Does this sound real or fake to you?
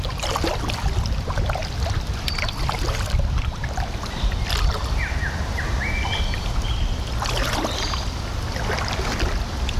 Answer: real